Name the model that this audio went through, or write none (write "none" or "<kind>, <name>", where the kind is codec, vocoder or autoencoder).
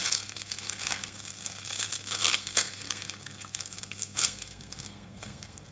codec, SNAC